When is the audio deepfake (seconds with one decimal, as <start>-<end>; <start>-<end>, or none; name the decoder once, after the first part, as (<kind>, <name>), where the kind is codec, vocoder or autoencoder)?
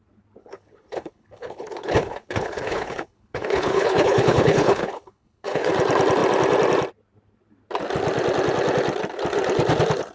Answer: 0.4-5.7 (codec, HILCodec)